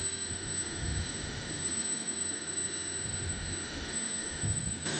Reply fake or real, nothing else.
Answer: fake